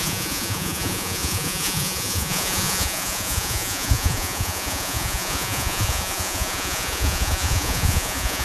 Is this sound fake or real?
fake